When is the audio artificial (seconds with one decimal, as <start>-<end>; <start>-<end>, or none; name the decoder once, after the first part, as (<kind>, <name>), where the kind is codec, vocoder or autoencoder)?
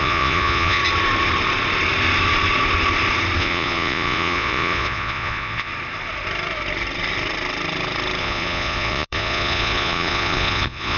0.0-0.8 (vocoder, Vocos); 3.4-5.7; 8.2-11.0